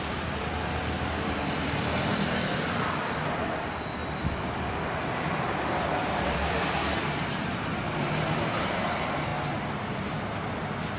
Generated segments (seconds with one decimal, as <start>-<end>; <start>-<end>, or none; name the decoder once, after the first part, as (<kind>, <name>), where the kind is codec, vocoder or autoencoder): 0.0-2.1 (vocoder, BigVGAN v2); 2.8-4.0; 4.5-9.3; 9.9-11.0